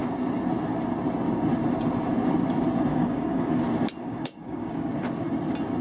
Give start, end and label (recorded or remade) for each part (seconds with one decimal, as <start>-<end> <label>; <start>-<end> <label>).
0.0-2.9 recorded; 2.9-3.6 remade; 3.6-4.0 recorded; 4.0-4.9 remade; 4.9-5.8 recorded